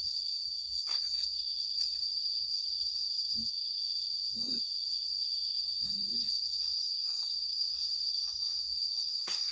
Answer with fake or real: fake